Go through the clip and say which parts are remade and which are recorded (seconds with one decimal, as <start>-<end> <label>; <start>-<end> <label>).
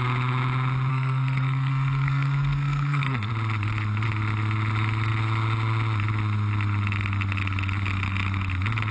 0.0-0.9 recorded; 0.9-3.3 remade; 3.3-8.9 recorded